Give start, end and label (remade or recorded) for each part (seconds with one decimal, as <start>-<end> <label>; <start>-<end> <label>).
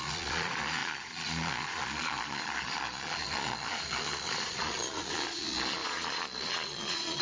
0.0-7.2 remade